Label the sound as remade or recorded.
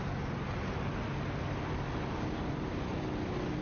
recorded